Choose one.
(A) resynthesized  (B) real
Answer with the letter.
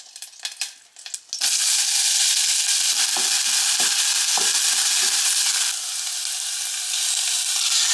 B